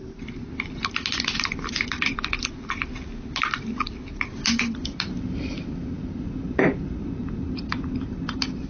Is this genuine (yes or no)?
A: yes